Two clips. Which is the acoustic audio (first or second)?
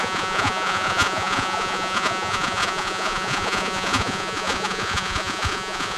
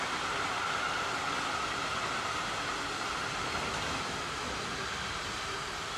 second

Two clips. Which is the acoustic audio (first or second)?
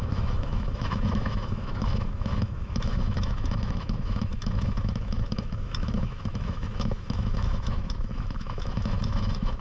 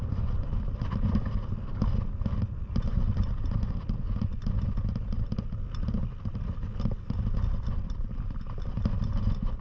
second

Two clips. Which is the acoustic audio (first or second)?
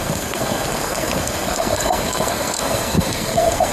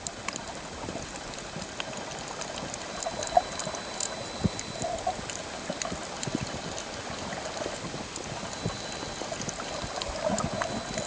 second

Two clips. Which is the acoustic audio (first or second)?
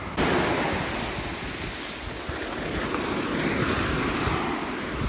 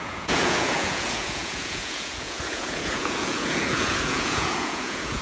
first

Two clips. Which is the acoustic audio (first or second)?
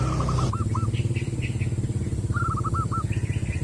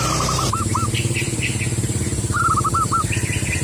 first